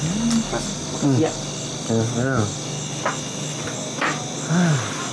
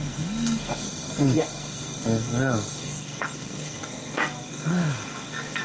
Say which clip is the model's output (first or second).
second